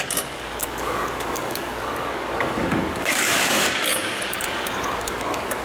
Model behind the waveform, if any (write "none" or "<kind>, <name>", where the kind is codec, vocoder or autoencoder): codec, DAC